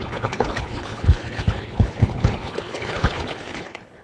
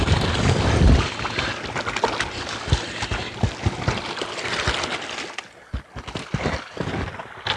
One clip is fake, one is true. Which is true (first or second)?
second